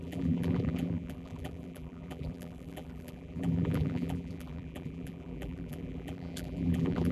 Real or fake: fake